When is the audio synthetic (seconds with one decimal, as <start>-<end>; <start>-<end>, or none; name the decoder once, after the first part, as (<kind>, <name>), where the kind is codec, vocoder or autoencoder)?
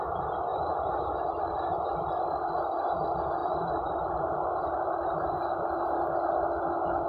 0.5-2.1 (vocoder, BigVGAN v2); 3.4-5.8